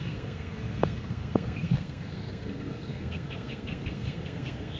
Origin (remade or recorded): remade